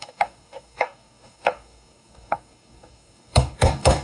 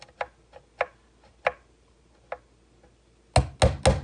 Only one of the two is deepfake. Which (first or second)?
first